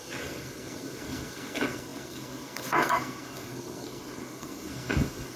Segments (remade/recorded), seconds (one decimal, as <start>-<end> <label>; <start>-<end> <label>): 0.0-5.4 remade